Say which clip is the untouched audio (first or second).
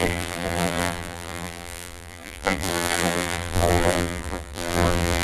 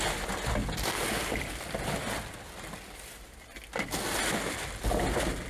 second